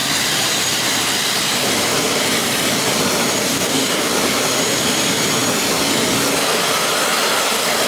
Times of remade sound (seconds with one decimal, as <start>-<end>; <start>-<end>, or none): 3.4-4.1